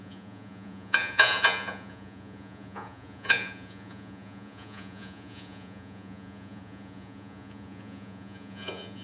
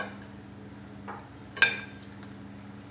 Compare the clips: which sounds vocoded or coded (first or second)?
first